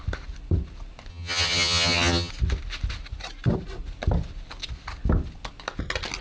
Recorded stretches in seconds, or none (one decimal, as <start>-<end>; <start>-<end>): 0.0-1.1; 2.3-6.2